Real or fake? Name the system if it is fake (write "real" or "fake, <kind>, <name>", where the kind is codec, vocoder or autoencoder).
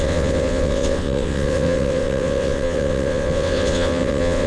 fake, vocoder, WaveNeXt